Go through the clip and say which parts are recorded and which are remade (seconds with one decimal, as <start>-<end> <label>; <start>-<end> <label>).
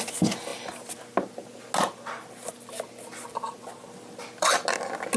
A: 0.0-5.2 recorded